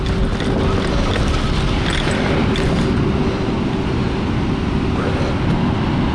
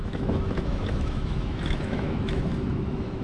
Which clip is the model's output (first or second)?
second